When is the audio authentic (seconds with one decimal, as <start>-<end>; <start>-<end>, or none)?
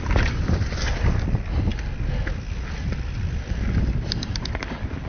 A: 0.0-5.1